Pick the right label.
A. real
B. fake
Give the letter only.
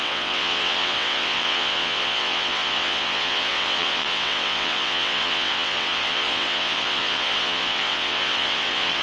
B